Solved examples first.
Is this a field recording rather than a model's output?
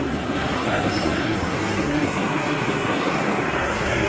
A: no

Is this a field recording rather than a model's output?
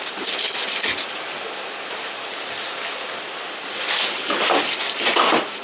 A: yes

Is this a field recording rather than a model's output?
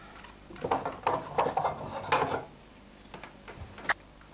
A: yes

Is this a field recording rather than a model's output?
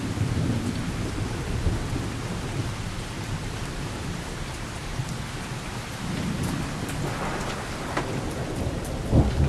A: yes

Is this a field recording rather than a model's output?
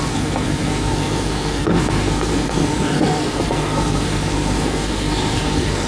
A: no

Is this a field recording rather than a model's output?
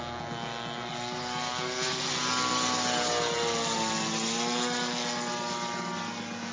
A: yes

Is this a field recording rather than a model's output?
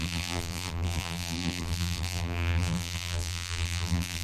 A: no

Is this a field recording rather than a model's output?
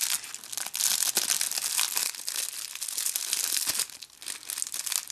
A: yes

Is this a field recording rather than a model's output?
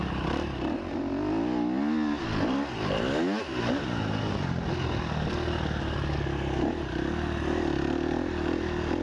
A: yes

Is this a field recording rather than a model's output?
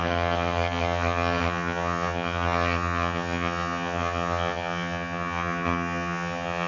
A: no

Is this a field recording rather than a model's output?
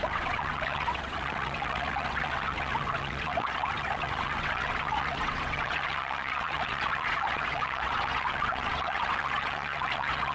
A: no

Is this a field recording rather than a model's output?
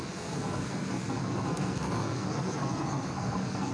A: no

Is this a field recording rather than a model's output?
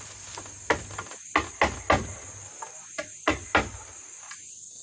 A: yes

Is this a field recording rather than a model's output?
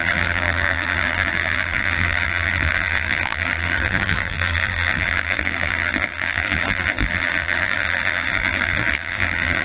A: no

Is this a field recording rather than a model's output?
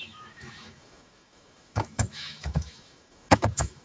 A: no